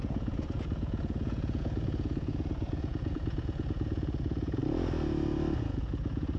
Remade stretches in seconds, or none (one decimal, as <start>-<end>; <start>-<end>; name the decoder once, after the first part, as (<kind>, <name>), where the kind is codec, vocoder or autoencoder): 0.0-4.6 (vocoder, Vocos); 5.6-6.4